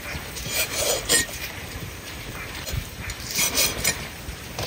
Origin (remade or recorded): remade